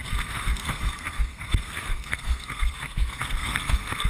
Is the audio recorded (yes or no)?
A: no